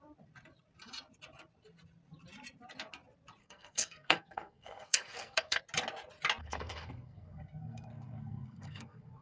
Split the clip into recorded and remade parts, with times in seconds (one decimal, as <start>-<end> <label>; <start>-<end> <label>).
0.0-3.4 recorded; 3.4-5.6 remade; 5.6-6.4 recorded; 6.4-9.2 remade